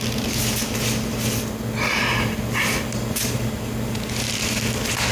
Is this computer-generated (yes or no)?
no